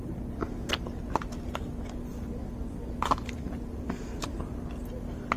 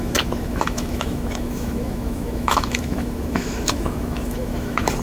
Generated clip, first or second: second